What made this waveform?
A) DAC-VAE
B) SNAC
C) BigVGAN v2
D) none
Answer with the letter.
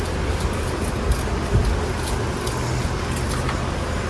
D